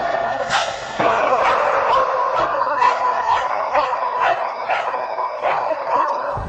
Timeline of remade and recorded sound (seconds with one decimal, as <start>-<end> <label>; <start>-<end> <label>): 0.0-1.4 remade; 1.4-2.4 recorded; 2.4-6.5 remade